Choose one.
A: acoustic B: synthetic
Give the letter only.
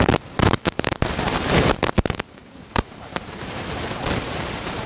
B